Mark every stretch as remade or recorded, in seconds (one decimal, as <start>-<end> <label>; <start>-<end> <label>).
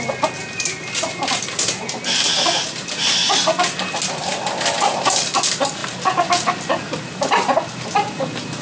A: 0.0-8.6 recorded